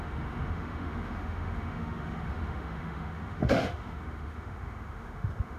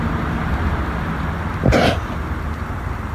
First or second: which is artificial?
first